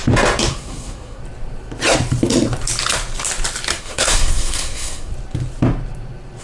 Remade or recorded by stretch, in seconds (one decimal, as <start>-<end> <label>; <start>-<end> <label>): 0.0-0.5 recorded; 0.5-1.2 remade; 1.2-3.8 recorded; 3.8-5.1 remade; 5.1-6.4 recorded